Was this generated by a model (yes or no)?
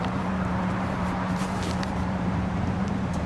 yes